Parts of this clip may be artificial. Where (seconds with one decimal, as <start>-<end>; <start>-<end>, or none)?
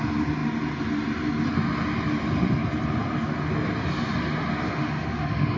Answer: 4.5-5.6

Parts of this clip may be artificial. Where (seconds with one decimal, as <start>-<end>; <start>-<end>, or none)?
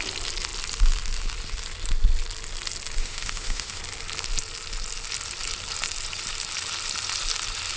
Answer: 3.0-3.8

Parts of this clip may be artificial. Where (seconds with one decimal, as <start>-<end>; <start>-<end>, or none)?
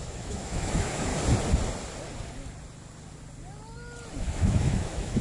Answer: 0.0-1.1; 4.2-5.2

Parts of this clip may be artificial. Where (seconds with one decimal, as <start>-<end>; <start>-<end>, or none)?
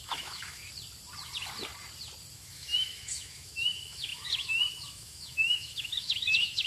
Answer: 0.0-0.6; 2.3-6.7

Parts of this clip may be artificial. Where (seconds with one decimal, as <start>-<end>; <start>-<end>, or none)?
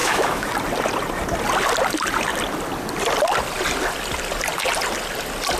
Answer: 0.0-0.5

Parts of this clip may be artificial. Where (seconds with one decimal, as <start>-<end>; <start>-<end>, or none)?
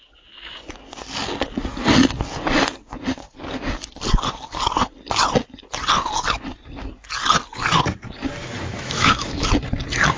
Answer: 8.7-9.5